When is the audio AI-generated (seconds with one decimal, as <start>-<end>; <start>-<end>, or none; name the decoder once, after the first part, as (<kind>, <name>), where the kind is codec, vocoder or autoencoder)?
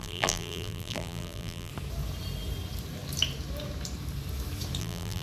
0.0-1.7 (vocoder, BigVGAN v2); 4.8-5.2